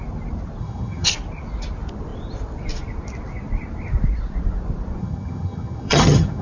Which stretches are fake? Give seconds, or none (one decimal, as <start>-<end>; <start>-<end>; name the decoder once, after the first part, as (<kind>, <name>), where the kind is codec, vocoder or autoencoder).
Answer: 0.6-1.1 (vocoder, HiFi-GAN); 5.0-6.4